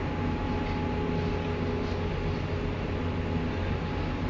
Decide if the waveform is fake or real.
real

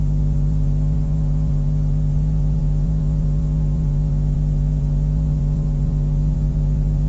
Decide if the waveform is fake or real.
fake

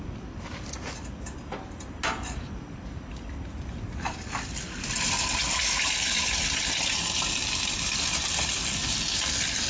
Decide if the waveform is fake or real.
real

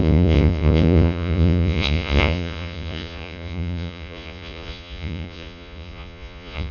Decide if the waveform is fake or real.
fake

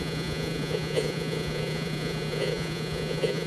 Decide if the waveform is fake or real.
fake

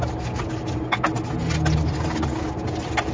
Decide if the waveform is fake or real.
real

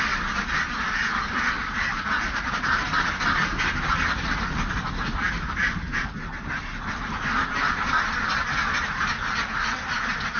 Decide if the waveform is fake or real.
real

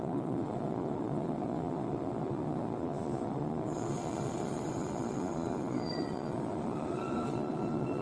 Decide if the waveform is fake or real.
fake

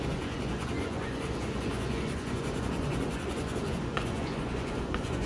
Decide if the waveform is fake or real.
fake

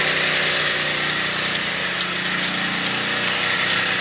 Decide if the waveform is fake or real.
real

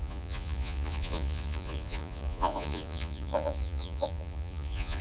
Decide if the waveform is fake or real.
fake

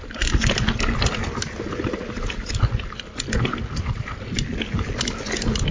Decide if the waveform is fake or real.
real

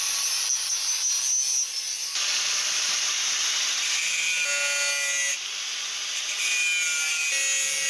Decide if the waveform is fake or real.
real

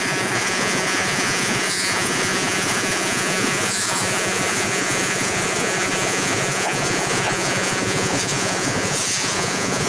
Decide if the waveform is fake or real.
fake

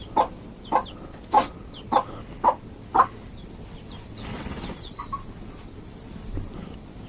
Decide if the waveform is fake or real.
real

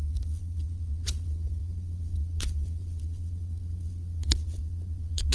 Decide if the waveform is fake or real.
fake